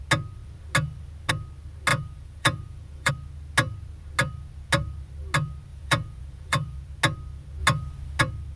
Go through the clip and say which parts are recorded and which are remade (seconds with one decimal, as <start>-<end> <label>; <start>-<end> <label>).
0.0-1.9 recorded; 1.9-3.1 remade; 3.1-5.7 recorded; 5.7-6.8 remade; 6.8-8.6 recorded